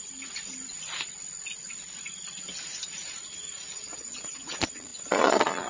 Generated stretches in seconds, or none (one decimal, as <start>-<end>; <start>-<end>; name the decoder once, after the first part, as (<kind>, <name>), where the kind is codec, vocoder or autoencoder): 3.2-5.7 (vocoder, Vocos)

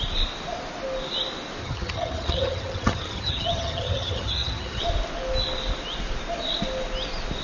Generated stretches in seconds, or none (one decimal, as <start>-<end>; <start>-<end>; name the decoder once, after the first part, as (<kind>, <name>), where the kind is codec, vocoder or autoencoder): 1.6-4.8 (vocoder, HiFi-GAN)